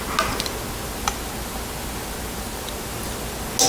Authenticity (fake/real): real